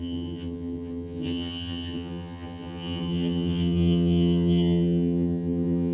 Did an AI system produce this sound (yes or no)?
yes